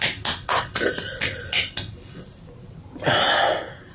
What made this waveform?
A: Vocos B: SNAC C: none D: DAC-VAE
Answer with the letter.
C